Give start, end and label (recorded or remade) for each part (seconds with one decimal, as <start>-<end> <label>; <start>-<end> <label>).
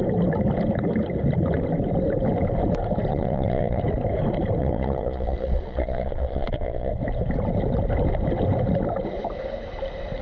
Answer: 0.0-3.1 recorded; 3.1-3.8 remade; 3.8-4.6 recorded; 4.6-6.9 remade; 6.9-10.2 recorded